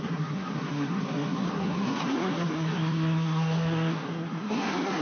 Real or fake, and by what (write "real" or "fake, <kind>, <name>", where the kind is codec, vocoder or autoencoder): fake, codec, SNAC